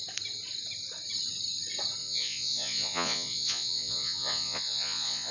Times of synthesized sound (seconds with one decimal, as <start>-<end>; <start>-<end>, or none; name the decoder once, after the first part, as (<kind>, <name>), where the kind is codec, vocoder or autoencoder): 2.0-5.3 (vocoder, Vocos)